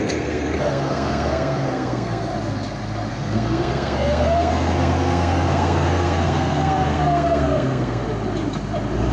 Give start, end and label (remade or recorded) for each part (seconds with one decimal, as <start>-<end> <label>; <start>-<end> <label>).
0.0-2.3 remade; 2.3-3.1 recorded; 3.1-8.0 remade; 8.0-9.1 recorded